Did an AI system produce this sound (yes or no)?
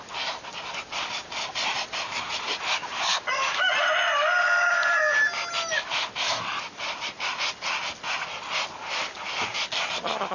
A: no